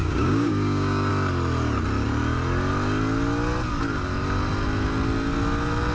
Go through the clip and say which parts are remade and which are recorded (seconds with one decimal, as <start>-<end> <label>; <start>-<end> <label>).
0.0-1.1 remade; 1.1-5.9 recorded